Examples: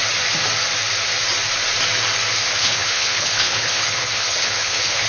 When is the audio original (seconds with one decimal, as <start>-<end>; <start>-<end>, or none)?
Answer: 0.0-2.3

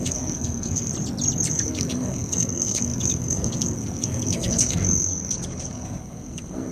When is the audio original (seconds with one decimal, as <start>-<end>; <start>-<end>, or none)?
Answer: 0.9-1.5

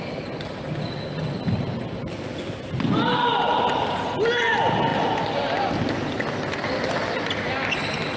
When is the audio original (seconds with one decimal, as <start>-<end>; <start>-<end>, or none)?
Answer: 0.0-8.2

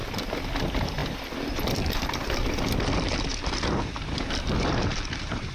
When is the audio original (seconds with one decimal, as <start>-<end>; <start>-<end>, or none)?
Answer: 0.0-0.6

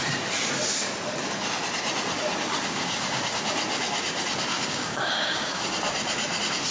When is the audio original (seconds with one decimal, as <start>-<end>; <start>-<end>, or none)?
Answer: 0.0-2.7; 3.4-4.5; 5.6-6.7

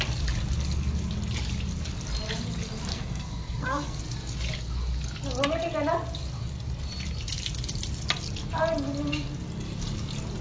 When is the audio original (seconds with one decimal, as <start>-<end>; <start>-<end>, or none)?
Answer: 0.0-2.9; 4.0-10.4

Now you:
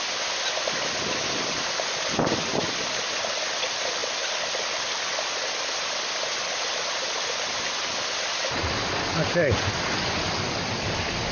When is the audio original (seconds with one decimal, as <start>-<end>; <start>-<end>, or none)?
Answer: 0.0-11.3

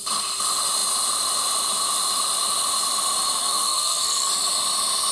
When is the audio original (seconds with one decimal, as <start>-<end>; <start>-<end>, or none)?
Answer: 0.0-3.4; 4.3-5.1